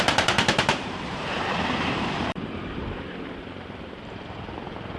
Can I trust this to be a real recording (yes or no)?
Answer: no